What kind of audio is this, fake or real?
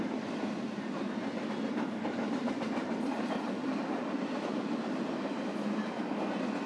real